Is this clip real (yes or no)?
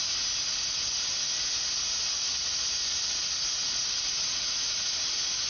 yes